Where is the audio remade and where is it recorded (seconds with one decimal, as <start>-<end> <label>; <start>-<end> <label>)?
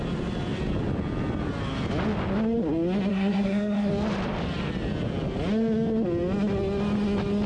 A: 0.0-3.1 recorded; 3.1-3.9 remade; 3.9-7.5 recorded